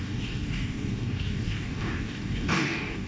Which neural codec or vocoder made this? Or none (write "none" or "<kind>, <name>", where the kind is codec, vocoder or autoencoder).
codec, DAC